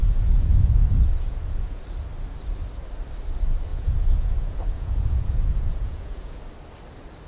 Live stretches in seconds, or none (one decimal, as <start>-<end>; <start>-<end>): 1.8-3.7; 6.4-7.3